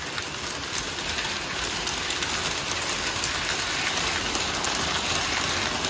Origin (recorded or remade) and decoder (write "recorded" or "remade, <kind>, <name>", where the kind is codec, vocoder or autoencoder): recorded